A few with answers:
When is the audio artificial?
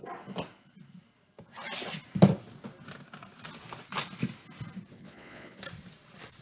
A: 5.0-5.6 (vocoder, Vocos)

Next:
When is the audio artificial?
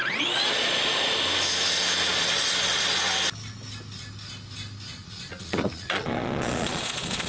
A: 0.0-1.1 (vocoder, Vocos); 2.1-3.0; 5.0-7.3